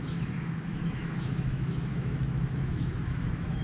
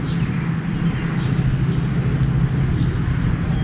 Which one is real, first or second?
second